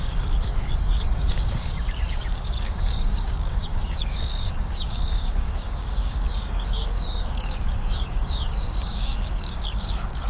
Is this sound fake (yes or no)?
yes